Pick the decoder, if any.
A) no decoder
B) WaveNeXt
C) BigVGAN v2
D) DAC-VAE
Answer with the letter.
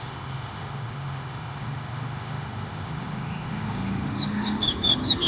D